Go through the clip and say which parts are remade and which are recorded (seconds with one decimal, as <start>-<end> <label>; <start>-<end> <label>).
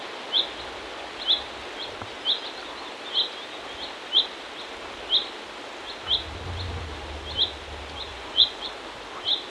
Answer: 0.0-8.1 recorded; 8.1-8.7 remade; 8.7-9.5 recorded